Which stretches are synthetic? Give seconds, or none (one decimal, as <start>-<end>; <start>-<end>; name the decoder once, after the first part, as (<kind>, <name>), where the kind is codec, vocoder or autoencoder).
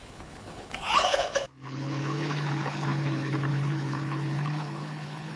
0.0-5.4 (codec, HILCodec)